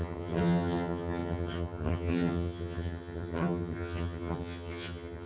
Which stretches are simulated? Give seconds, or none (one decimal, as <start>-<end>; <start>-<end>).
0.0-5.3